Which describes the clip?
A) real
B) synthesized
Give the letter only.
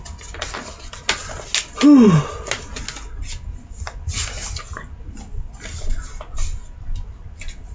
A